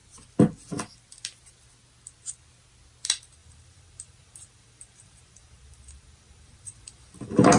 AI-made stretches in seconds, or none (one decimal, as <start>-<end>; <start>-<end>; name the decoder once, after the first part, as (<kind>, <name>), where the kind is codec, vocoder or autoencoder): 3.4-7.6 (vocoder, BigVGAN v2)